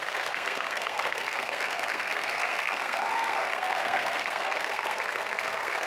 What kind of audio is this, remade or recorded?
remade